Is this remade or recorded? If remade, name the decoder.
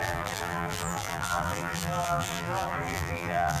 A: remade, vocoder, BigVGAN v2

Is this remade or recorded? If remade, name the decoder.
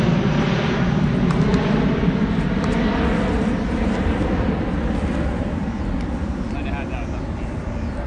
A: recorded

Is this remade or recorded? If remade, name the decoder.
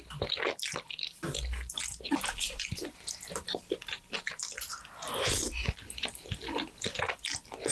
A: recorded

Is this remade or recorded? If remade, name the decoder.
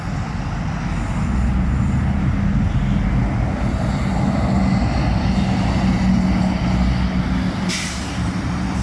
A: recorded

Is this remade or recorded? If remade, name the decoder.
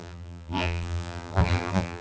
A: remade, vocoder, BigVGAN v2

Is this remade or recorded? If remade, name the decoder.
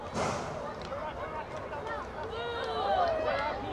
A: recorded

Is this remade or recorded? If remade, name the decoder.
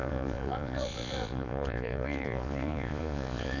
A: remade, vocoder, Vocos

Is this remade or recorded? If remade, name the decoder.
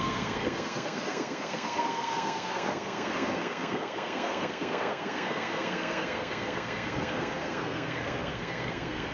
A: remade, codec, SNAC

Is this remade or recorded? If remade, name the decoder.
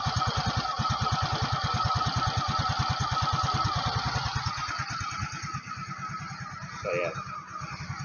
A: recorded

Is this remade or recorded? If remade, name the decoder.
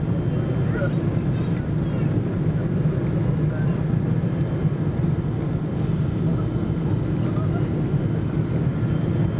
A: recorded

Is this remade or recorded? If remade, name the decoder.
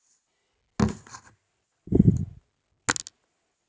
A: recorded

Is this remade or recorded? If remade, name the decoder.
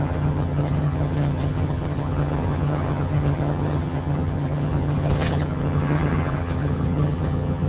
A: remade, vocoder, HiFi-GAN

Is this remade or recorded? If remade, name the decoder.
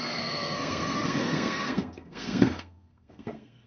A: remade, codec, SNAC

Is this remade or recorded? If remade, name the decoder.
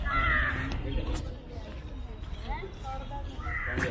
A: recorded